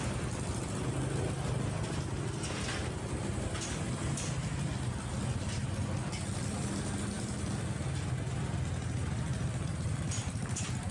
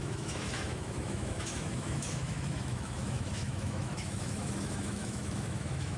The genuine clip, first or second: first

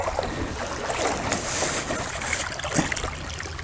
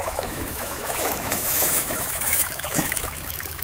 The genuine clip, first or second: first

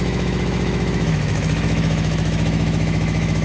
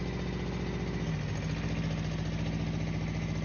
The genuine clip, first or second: second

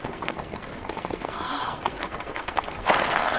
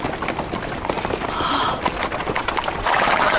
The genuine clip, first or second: second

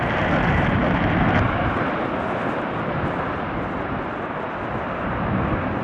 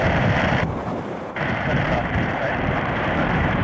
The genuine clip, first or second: first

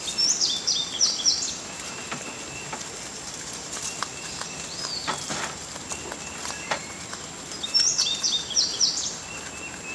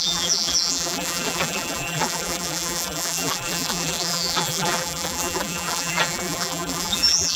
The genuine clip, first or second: first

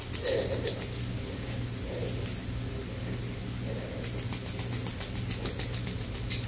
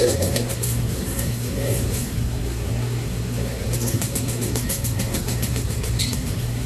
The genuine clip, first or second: first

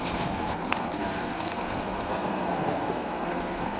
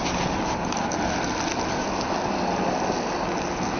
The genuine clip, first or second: second